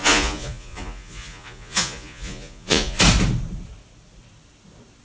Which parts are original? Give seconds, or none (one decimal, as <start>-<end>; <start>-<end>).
3.0-5.0